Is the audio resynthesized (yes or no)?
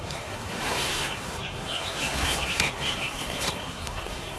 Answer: yes